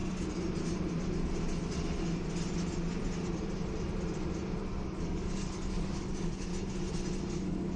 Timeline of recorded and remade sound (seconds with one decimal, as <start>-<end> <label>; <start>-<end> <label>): 0.0-4.7 recorded; 4.7-6.5 remade; 6.5-7.2 recorded; 7.2-7.8 remade